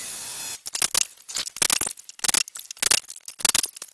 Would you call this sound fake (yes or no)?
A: no